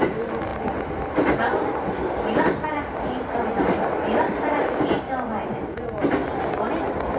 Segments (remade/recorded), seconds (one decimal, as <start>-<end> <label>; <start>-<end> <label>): 0.0-7.2 recorded